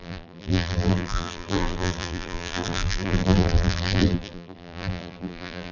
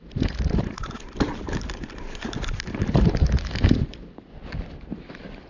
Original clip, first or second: second